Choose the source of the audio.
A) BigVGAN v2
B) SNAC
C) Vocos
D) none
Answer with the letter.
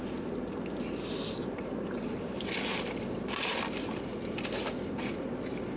D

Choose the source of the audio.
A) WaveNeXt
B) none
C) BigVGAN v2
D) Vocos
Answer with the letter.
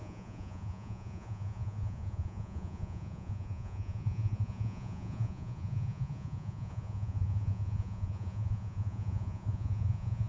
D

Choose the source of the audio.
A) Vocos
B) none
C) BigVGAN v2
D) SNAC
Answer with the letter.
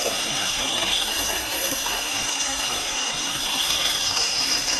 D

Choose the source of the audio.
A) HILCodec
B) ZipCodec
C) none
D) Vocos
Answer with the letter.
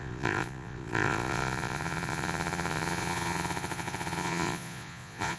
D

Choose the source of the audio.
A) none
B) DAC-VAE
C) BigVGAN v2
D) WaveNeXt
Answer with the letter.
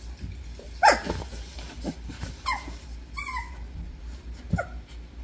A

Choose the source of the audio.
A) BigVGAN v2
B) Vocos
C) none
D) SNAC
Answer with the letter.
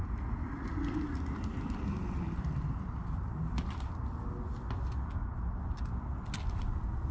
C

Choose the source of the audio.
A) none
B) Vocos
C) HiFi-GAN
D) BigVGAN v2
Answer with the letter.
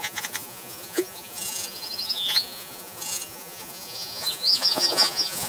B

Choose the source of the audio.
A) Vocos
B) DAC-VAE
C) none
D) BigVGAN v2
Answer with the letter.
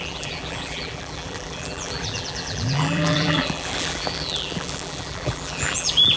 D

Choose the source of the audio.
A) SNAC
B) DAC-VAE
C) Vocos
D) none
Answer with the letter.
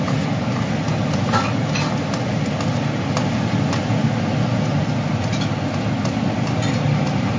D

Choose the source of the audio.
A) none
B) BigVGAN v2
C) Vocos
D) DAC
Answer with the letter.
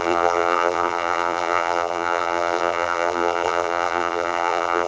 B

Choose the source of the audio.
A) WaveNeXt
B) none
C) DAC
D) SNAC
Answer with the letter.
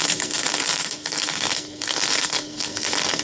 D